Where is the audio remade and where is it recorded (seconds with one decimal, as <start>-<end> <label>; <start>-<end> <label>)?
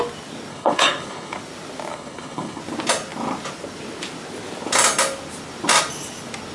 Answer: 0.0-0.5 recorded; 0.5-1.4 remade; 1.4-1.9 recorded; 1.9-2.6 remade; 2.6-6.5 recorded